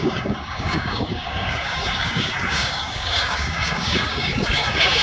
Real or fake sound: fake